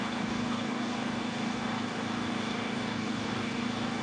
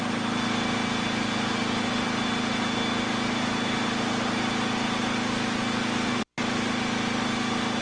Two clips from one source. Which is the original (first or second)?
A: second